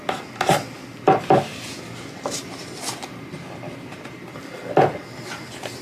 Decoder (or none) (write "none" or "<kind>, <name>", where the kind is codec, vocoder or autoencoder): none